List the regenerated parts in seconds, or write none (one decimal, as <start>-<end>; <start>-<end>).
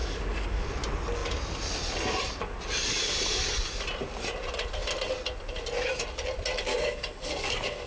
0.0-0.7; 6.7-7.9